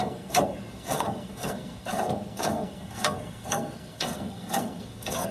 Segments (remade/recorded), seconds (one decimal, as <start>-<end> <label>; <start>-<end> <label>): 0.0-5.3 remade